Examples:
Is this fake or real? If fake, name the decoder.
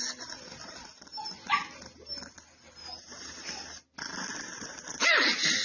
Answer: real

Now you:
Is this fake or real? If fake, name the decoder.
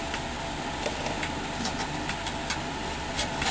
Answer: fake, vocoder, BigVGAN v2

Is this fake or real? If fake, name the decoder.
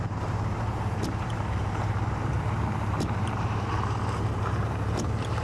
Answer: fake, vocoder, BigVGAN v2